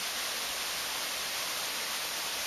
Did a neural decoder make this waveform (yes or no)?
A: no